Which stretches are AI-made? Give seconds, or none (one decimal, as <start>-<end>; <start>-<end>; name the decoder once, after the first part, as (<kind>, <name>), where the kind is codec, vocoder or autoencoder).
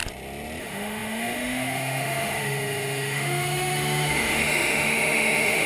0.6-5.7 (autoencoder, DAC-VAE)